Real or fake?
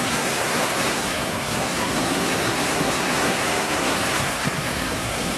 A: fake